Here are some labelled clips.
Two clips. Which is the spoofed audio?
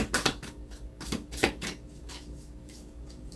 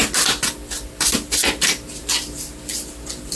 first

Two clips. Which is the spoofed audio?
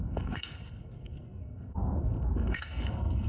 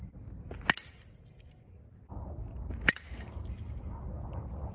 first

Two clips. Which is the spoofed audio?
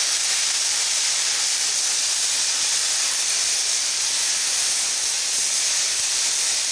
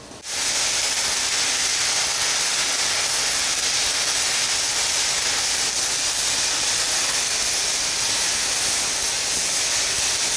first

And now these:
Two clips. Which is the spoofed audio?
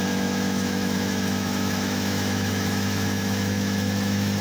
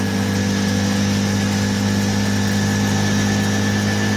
first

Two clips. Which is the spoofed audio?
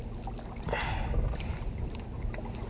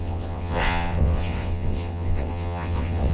second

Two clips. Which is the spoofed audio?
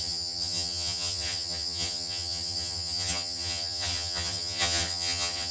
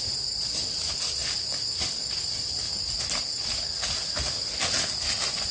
first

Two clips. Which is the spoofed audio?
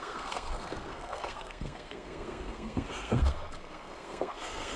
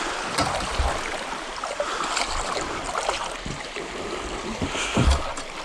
first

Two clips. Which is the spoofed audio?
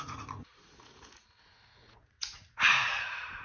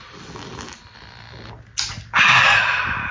first